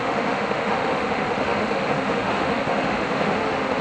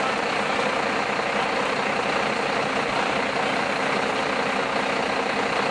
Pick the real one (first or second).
second